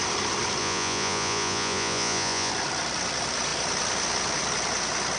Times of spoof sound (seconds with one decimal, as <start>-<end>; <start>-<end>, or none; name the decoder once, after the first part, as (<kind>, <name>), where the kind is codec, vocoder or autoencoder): 0.6-2.5 (vocoder, Vocos)